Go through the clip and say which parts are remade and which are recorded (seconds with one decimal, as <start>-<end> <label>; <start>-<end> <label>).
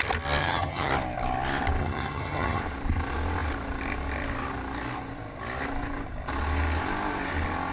0.0-0.4 recorded; 0.4-0.9 remade; 0.9-1.8 recorded; 1.8-2.6 remade; 2.6-7.7 recorded